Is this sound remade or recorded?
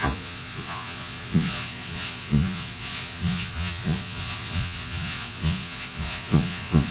remade